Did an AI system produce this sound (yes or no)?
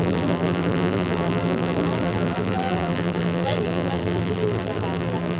yes